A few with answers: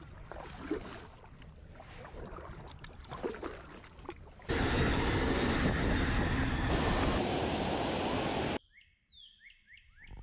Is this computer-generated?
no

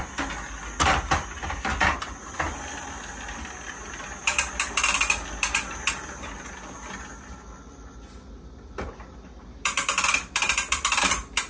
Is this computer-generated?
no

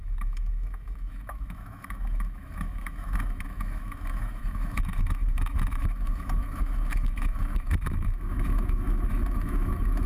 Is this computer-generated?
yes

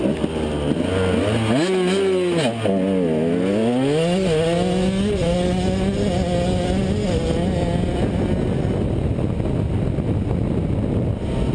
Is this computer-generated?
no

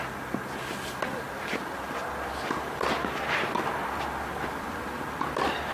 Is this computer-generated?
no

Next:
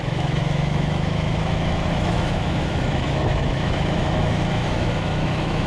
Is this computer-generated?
yes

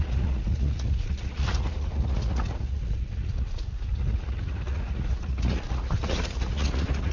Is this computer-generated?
yes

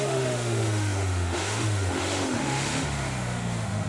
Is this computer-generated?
yes